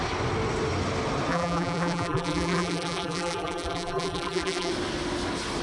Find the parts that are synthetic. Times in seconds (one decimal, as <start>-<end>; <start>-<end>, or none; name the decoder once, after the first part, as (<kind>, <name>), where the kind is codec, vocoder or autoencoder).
1.3-4.7 (vocoder, BigVGAN v2)